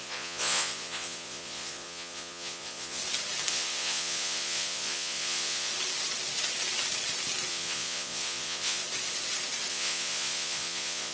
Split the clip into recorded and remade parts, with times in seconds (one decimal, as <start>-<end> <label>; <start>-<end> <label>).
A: 0.0-3.0 remade; 3.0-3.5 recorded; 3.5-5.7 remade; 5.7-7.5 recorded; 7.5-8.8 remade; 8.8-9.7 recorded; 9.7-11.1 remade